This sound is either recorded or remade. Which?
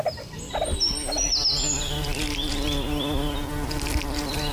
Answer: recorded